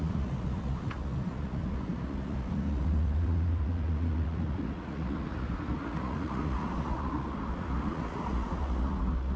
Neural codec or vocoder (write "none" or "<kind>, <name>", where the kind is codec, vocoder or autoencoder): vocoder, Vocos